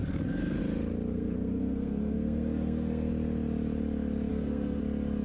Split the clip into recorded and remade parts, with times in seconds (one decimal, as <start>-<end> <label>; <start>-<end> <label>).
0.0-1.1 recorded; 1.1-3.1 remade; 3.1-4.3 recorded; 4.3-4.8 remade; 4.8-5.2 recorded